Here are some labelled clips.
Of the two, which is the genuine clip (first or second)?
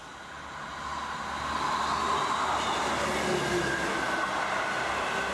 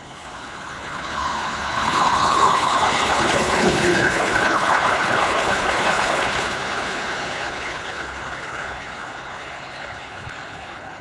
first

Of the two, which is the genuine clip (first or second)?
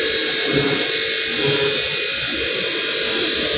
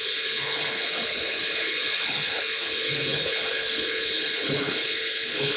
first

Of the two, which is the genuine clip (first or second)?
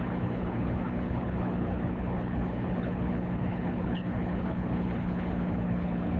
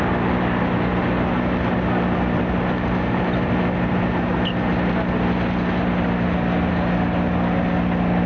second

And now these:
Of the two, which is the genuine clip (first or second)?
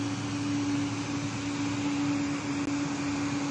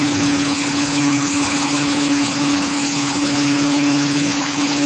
first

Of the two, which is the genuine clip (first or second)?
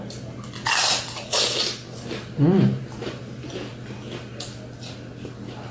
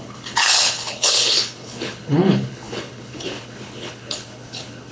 first